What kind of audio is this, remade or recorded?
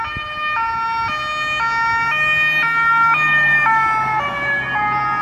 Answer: recorded